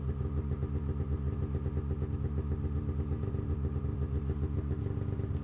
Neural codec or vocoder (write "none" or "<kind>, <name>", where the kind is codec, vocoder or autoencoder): none